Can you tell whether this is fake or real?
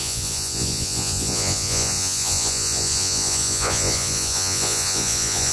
fake